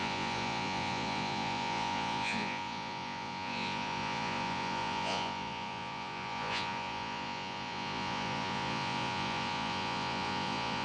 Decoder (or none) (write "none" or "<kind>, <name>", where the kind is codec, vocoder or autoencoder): vocoder, Vocos